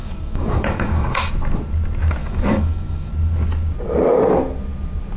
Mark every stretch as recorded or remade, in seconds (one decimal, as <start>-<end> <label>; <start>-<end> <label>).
0.0-1.3 remade; 1.3-2.2 recorded; 2.2-3.1 remade; 3.1-5.2 recorded